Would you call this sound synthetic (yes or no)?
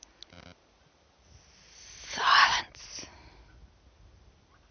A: no